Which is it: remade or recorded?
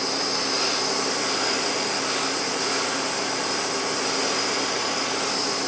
recorded